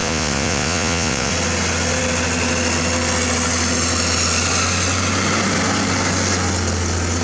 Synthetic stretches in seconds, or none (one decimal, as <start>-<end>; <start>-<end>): 0.0-1.3